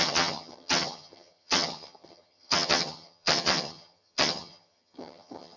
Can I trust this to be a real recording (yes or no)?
no